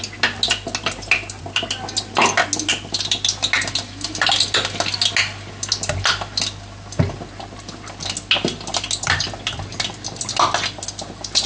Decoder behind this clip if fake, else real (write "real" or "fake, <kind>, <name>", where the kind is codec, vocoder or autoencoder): real